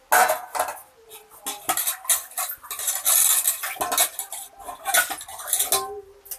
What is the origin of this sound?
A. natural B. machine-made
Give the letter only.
A